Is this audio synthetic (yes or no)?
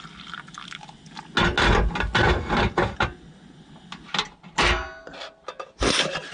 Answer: no